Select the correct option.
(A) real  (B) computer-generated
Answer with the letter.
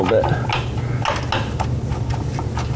A